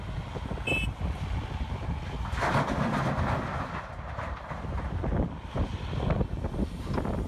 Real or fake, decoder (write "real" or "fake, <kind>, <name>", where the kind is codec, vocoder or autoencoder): real